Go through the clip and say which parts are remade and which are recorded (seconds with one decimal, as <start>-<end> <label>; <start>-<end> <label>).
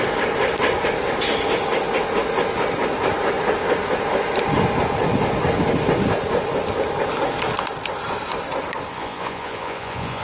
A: 0.0-8.9 recorded; 8.9-10.2 remade